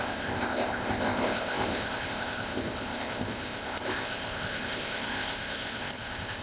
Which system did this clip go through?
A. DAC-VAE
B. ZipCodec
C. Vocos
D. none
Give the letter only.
B